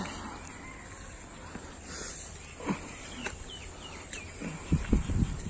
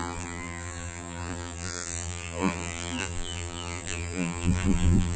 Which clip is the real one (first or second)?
first